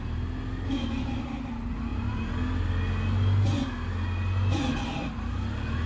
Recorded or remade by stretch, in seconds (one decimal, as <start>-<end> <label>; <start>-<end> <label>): 0.0-5.9 recorded